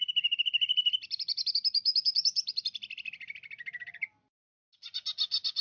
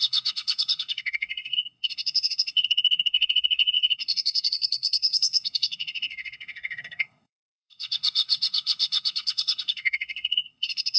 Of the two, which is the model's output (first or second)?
second